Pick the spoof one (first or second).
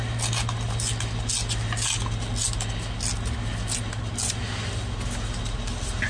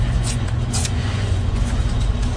second